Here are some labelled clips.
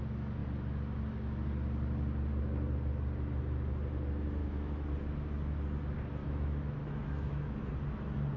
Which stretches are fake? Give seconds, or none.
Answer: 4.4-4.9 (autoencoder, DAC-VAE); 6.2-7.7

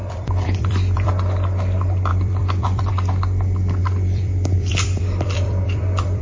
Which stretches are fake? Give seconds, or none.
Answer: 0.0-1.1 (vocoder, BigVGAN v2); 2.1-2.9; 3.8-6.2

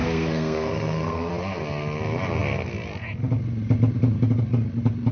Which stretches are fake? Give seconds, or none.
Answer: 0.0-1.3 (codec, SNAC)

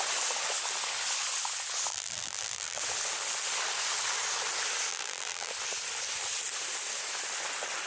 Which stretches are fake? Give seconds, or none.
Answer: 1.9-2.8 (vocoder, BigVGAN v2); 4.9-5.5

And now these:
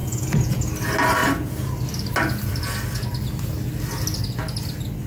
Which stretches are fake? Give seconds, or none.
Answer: 0.0-0.7 (vocoder, Vocos)

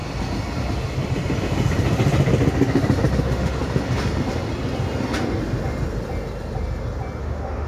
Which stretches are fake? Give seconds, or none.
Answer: 3.2-3.6 (autoencoder, DAC-VAE); 7.2-7.7

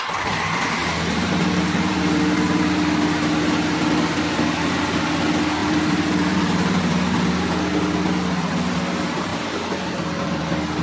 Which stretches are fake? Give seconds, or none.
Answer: 0.8-2.0 (vocoder, BigVGAN v2); 5.6-6.8; 9.3-10.4

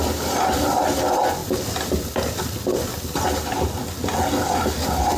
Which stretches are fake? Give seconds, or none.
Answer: 1.4-3.6 (vocoder, BigVGAN v2)